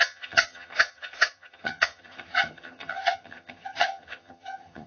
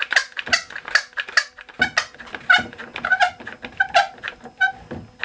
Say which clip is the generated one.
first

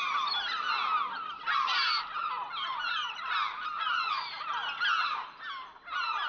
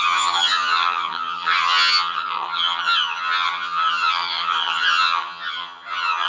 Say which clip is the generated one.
second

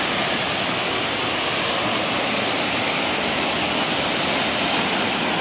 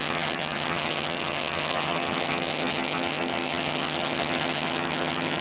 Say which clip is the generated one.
second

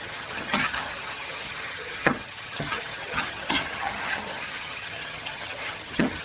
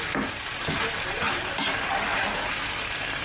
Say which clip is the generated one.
first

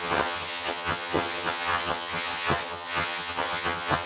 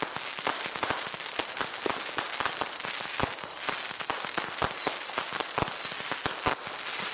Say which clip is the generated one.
first